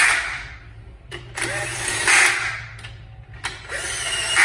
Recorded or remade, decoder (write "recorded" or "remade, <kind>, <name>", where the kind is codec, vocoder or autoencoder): recorded